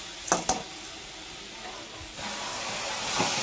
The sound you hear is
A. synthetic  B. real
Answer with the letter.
B